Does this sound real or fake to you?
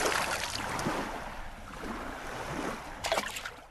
real